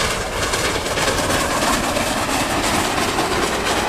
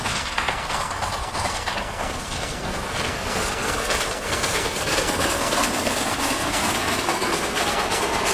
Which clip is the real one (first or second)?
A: first